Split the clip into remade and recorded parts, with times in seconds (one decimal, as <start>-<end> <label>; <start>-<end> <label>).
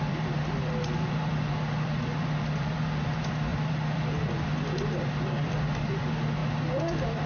0.0-6.4 remade; 6.4-7.3 recorded